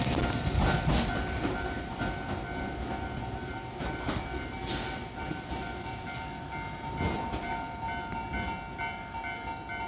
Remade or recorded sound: recorded